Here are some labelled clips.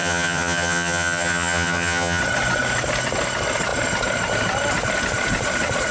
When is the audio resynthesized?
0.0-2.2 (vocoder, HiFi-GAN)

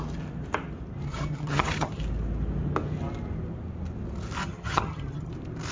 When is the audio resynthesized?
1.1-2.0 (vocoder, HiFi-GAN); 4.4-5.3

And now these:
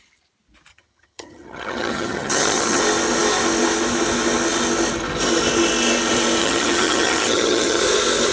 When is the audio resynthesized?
0.7-2.8 (vocoder, HiFi-GAN); 6.4-7.8

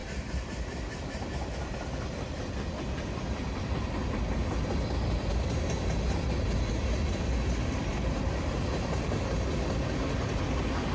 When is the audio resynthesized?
none

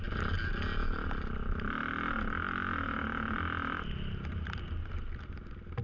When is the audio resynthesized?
none

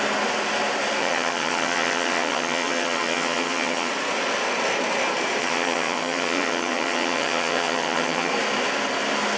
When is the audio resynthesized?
1.0-3.9 (vocoder, HiFi-GAN); 5.4-8.3